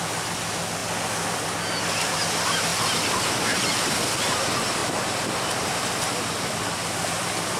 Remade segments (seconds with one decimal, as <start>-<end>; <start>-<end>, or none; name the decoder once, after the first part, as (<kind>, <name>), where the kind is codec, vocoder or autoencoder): 0.8-2.2 (vocoder, BigVGAN v2); 2.7-4.1; 4.8-7.6